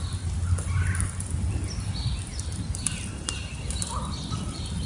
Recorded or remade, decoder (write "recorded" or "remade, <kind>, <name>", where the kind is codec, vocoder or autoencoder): recorded